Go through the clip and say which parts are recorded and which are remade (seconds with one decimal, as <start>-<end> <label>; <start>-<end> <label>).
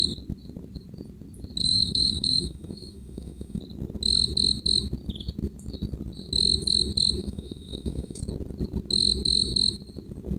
0.0-1.6 recorded; 1.6-3.6 remade; 3.6-7.2 recorded; 7.2-8.2 remade; 8.2-10.4 recorded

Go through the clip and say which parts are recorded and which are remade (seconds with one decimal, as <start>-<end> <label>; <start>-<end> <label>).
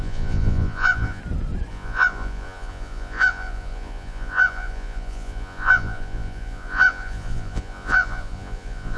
0.0-1.2 remade; 1.2-1.7 recorded; 1.7-9.0 remade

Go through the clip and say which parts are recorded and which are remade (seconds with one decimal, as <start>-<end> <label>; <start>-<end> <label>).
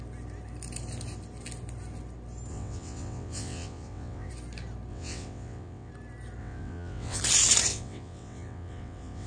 0.0-2.5 recorded; 2.5-4.3 remade; 4.3-4.9 recorded; 4.9-5.9 remade; 5.9-6.4 recorded; 6.4-7.2 remade; 7.2-7.7 recorded; 7.7-9.3 remade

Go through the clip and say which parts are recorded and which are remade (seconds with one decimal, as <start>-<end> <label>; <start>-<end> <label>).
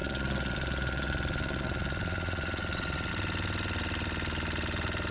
0.0-3.1 remade; 3.1-5.1 recorded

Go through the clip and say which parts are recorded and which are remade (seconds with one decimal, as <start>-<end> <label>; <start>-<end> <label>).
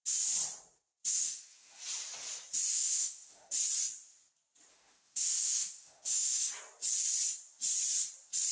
0.0-1.2 recorded; 1.2-1.8 remade; 1.8-2.7 recorded; 2.7-3.6 remade; 3.6-4.7 recorded; 4.7-6.5 remade; 6.5-8.5 recorded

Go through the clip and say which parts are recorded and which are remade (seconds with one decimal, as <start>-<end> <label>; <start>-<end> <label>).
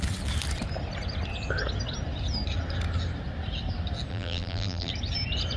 0.0-4.1 recorded; 4.1-4.9 remade; 4.9-5.6 recorded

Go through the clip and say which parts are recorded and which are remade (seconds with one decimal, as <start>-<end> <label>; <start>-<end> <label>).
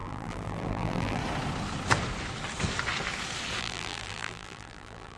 0.0-1.2 remade; 1.2-3.6 recorded; 3.6-5.2 remade